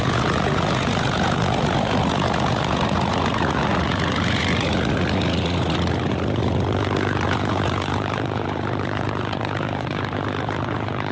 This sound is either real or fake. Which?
fake